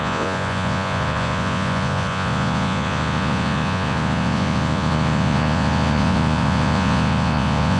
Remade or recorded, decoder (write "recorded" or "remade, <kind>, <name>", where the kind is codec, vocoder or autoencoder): remade, vocoder, Vocos